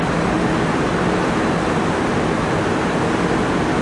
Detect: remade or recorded recorded